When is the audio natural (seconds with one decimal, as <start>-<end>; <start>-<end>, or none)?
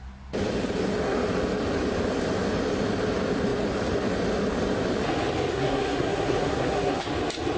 0.0-5.5; 7.1-7.6